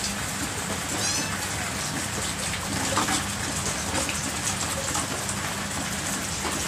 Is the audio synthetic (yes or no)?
no